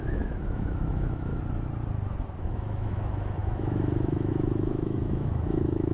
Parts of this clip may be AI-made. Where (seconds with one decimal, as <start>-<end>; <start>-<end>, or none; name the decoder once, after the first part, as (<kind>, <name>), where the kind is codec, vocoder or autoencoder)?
0.0-1.3 (autoencoder, DAC-VAE); 2.4-5.9